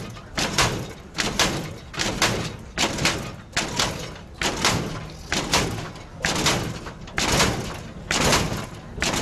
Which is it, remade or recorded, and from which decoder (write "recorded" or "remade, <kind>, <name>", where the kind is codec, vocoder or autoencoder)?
recorded